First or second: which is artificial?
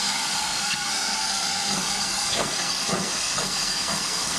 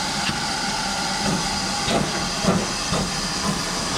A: first